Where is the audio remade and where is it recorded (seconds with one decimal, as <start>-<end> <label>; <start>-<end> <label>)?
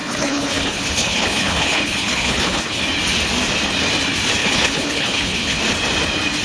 0.0-2.8 remade; 2.8-4.4 recorded; 4.4-5.6 remade; 5.6-6.4 recorded